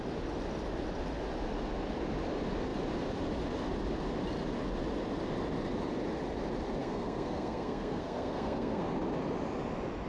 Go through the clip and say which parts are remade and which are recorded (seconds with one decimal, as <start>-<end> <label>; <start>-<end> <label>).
0.0-6.8 recorded; 6.8-8.9 remade; 8.9-10.1 recorded